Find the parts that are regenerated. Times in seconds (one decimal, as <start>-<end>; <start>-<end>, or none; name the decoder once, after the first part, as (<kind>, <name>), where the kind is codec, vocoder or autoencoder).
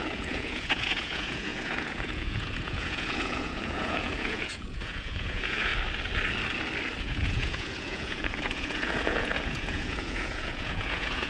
0.0-5.7 (vocoder, Vocos); 7.0-11.3